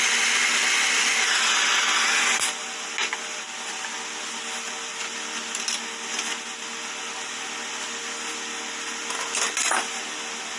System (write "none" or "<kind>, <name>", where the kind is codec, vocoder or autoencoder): none